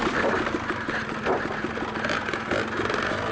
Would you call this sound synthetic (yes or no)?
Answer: no